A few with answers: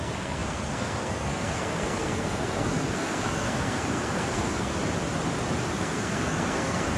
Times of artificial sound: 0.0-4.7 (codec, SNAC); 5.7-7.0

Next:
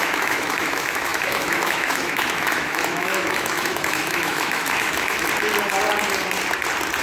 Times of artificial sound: 0.0-5.3 (autoencoder, DAC-VAE)

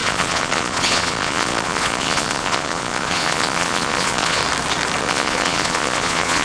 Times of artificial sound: 0.0-4.4 (vocoder, Vocos); 5.0-6.4

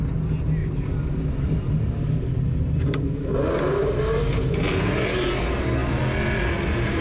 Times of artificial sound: 0.6-4.2 (vocoder, BigVGAN v2)

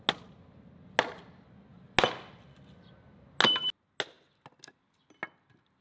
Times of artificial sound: none

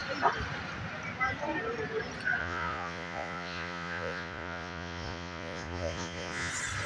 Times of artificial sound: 2.4-6.5 (vocoder, Vocos)

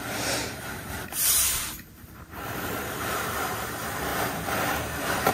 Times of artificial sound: 0.0-4.1 (vocoder, BigVGAN v2); 4.8-5.3